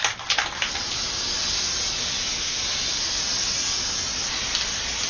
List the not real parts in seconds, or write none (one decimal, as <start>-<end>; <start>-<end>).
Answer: 0.5-1.8